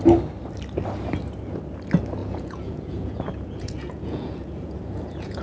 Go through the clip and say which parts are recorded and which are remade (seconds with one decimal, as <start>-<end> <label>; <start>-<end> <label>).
0.0-2.2 recorded; 2.2-5.4 remade